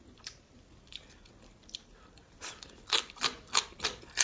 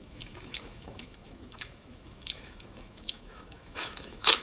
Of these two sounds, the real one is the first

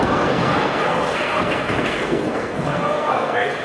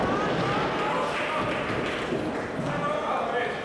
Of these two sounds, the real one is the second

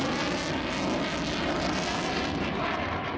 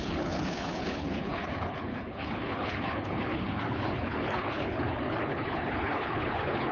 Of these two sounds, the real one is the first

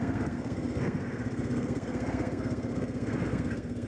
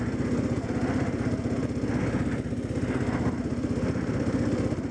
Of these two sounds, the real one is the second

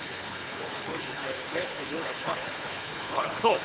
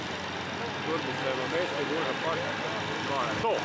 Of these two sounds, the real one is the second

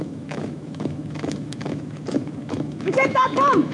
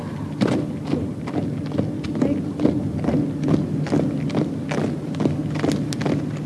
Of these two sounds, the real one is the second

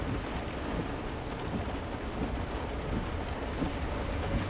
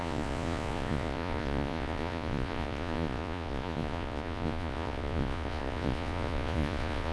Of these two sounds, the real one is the first